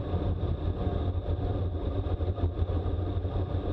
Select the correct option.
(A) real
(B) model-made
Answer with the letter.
A